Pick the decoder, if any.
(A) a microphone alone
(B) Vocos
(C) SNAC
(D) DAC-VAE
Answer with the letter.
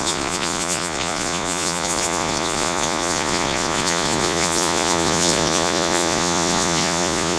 B